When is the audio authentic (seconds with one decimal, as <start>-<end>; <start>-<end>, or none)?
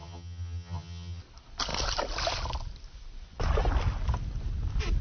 1.2-5.0